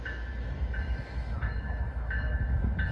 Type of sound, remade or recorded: remade